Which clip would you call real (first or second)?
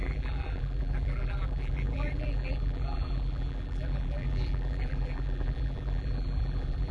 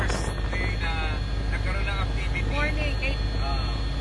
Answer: second